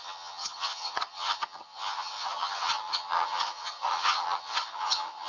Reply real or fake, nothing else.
fake